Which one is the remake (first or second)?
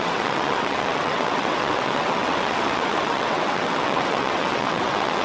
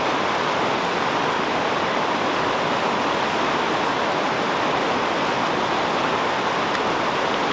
first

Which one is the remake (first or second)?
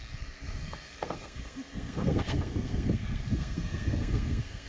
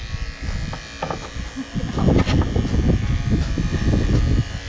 first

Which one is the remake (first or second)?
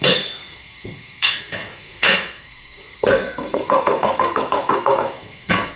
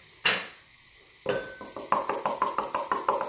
first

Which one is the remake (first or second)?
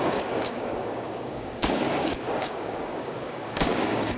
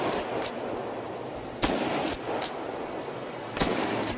first